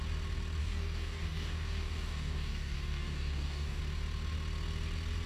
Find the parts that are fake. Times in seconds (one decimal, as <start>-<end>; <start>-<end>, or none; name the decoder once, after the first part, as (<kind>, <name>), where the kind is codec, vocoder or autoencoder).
0.6-3.8 (codec, DAC)